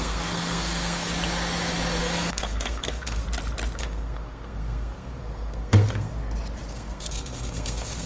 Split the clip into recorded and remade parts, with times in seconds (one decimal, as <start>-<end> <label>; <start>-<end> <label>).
0.0-1.1 remade; 1.1-2.0 recorded; 2.0-3.2 remade; 3.2-3.8 recorded; 3.8-6.1 remade; 6.1-6.7 recorded; 6.7-8.1 remade